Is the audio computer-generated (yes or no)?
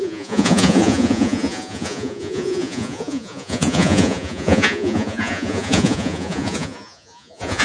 yes